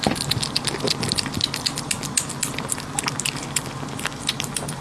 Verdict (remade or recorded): recorded